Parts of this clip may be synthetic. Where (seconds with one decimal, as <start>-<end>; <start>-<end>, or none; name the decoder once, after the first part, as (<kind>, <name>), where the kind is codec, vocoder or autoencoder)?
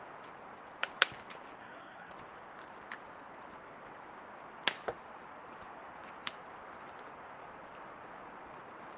1.6-2.1 (codec, SNAC)